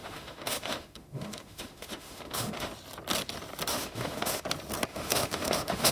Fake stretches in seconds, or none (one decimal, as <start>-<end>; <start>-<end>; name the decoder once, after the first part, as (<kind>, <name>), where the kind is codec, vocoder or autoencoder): 0.0-2.7 (autoencoder, DAC-VAE); 3.7-4.4; 4.9-5.9